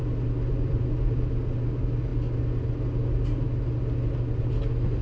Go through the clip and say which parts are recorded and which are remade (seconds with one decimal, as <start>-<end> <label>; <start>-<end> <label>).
0.0-5.0 recorded

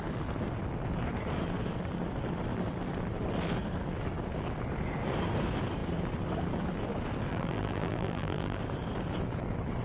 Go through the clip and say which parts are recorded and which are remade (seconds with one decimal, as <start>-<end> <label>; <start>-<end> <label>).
0.0-7.3 recorded; 7.3-8.6 remade; 8.6-9.8 recorded

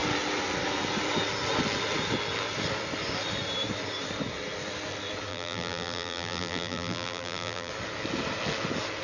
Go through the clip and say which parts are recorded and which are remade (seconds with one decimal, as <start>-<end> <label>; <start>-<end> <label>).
0.0-5.3 recorded; 5.3-7.7 remade; 7.7-9.0 recorded

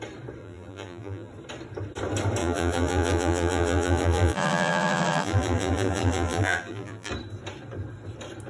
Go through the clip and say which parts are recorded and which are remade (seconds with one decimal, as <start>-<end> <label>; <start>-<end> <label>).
0.0-0.4 recorded; 0.4-1.3 remade; 1.3-2.4 recorded; 2.4-7.1 remade; 7.1-8.5 recorded